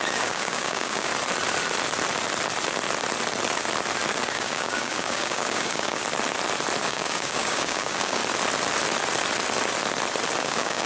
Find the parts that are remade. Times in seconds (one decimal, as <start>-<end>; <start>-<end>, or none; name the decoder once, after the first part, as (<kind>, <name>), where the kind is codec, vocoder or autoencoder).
0.0-1.1 (codec, DAC); 4.3-6.0; 6.8-8.2; 10.4-10.9